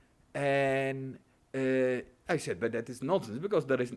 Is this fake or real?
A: real